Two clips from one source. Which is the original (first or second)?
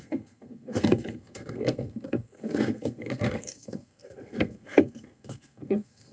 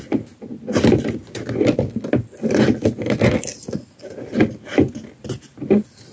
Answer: second